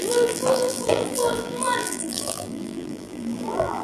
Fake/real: fake